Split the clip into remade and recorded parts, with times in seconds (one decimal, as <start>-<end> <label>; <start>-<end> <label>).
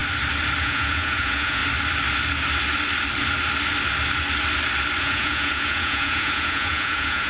0.0-0.6 recorded; 0.6-1.6 remade; 1.6-5.0 recorded; 5.0-7.3 remade